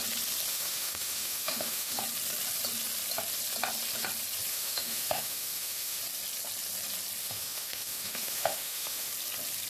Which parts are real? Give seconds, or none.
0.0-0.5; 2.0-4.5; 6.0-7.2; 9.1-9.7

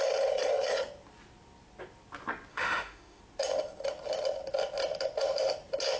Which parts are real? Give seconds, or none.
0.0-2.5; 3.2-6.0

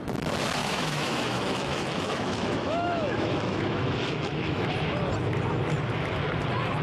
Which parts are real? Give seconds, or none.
0.0-0.6; 4.7-6.8

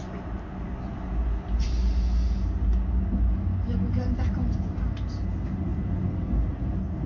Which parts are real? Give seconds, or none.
0.0-7.1

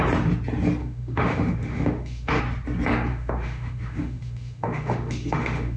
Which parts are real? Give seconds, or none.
0.0-0.8; 2.4-3.1

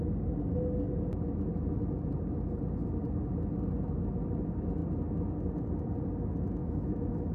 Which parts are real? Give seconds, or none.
0.0-6.6

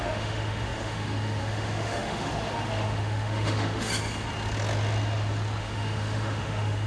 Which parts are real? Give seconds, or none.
3.9-5.6

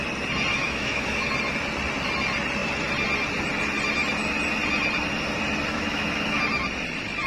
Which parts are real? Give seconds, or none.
0.0-0.5; 1.3-5.7; 6.4-7.3